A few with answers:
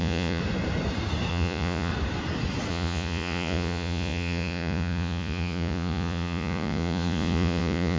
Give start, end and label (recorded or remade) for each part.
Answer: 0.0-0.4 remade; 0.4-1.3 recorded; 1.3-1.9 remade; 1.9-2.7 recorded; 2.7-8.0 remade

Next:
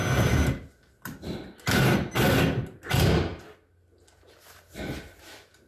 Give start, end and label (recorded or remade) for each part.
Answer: 0.0-5.7 recorded

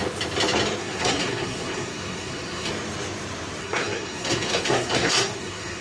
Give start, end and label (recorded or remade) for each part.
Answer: 0.0-0.8 recorded; 0.8-2.7 remade; 2.7-3.6 recorded; 3.6-5.8 remade

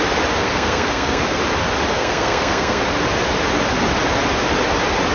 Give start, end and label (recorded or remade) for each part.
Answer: 0.0-0.4 recorded; 0.4-1.4 remade; 1.4-1.9 recorded; 1.9-2.8 remade; 2.8-5.1 recorded

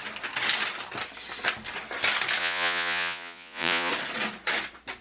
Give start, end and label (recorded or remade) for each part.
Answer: 0.0-2.4 recorded; 2.4-3.9 remade; 3.9-5.0 recorded

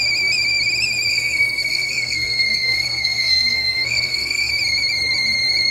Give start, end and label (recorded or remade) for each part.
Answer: 0.0-1.1 recorded; 1.1-4.5 remade; 4.5-5.7 recorded

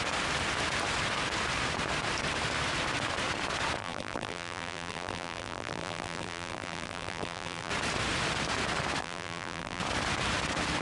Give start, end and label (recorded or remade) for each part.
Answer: 0.0-3.8 recorded; 3.8-7.7 remade; 7.7-9.0 recorded; 9.0-9.8 remade; 9.8-10.8 recorded

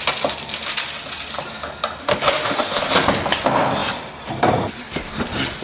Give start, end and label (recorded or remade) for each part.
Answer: 0.0-2.0 recorded; 2.0-2.8 remade; 2.8-5.6 recorded